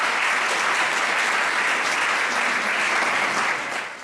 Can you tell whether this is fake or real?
real